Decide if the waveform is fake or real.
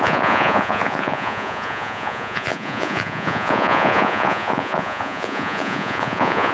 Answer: fake